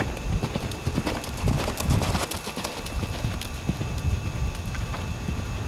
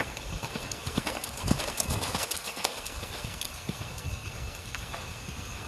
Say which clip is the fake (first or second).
second